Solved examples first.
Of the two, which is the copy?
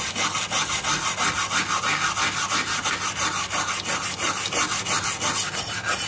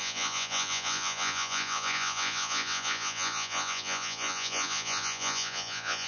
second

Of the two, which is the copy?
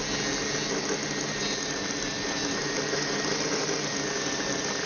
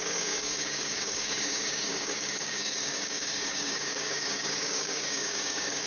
second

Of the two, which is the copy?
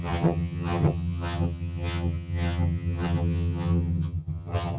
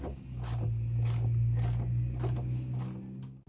first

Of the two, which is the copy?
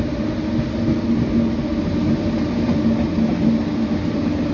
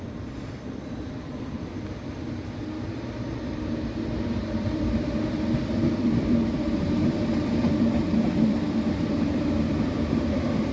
second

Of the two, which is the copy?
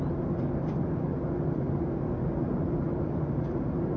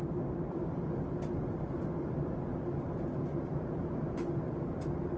second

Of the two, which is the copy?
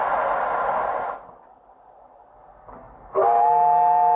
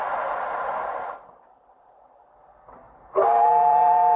second